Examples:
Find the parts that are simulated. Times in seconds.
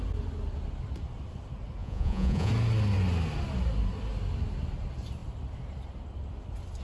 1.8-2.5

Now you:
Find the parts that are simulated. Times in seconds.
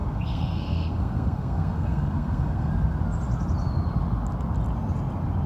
0.0-2.7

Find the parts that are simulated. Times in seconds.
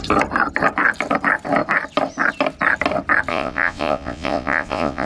3.3-5.1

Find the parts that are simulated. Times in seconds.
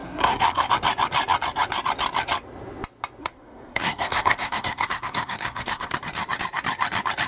0.0-0.7; 3.2-6.0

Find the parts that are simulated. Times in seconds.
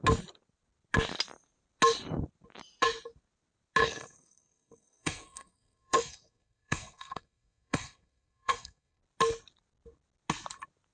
3.8-9.0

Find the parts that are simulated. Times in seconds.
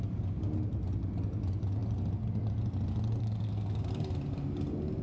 3.2-3.9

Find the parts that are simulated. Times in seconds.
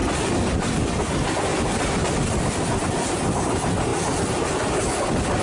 0.0-0.5